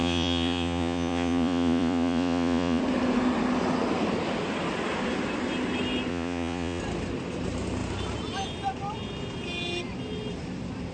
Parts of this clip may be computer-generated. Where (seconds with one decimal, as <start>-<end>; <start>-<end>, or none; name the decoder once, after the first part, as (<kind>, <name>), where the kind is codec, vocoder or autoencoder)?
0.0-2.8 (vocoder, Vocos); 6.1-6.8